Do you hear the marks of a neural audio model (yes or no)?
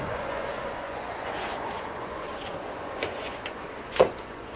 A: yes